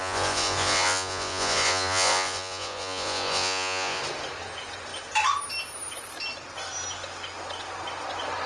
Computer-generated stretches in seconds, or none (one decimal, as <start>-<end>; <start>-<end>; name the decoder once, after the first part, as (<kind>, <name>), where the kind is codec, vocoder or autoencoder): 0.0-4.0 (vocoder, Vocos)